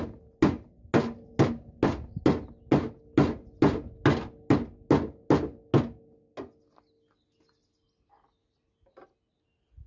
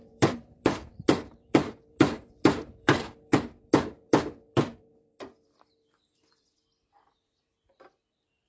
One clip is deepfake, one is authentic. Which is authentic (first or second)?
first